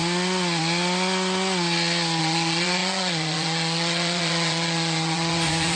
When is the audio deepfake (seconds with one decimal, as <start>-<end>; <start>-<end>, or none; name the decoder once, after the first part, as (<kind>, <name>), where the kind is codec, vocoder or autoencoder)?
2.2-5.8 (vocoder, Vocos)